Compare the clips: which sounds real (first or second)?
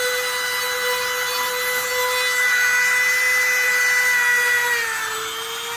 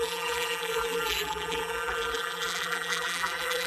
first